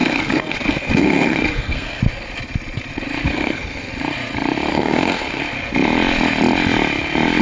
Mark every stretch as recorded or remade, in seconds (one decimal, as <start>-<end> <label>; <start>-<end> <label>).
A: 0.0-2.0 remade; 2.0-3.3 recorded; 3.3-3.9 remade; 3.9-4.7 recorded; 4.7-5.4 remade; 5.4-7.4 recorded